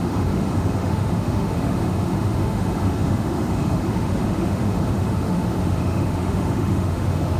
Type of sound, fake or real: fake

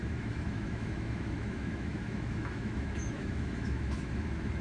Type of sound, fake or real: fake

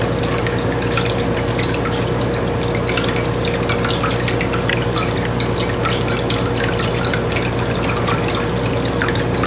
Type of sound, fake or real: real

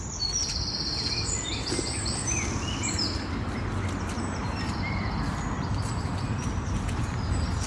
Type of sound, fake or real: real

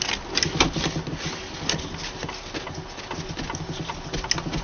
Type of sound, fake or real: real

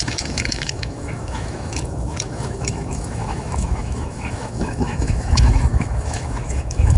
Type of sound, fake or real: fake